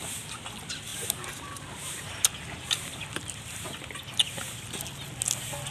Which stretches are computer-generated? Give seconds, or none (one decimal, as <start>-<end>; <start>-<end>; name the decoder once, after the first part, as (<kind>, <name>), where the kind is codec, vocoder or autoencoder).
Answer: none